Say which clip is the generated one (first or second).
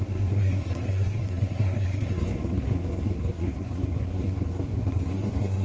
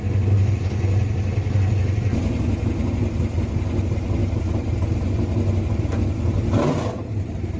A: first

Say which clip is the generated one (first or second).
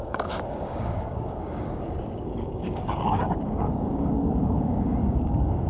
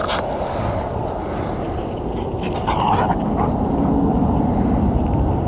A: first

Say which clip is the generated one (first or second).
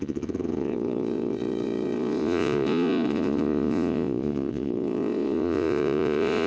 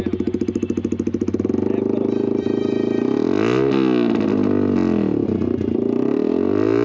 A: first